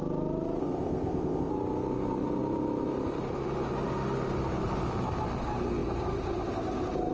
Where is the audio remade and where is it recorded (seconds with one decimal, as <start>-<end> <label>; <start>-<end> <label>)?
0.0-0.6 recorded; 0.6-1.5 remade; 1.5-7.1 recorded